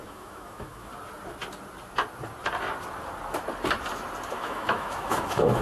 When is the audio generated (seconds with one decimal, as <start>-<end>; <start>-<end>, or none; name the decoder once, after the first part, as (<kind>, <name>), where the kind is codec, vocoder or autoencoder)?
0.0-0.9 (autoencoder, DAC-VAE); 4.3-5.6